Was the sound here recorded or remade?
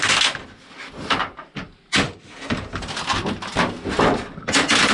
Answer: recorded